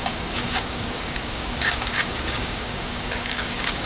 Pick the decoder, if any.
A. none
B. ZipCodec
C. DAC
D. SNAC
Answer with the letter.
C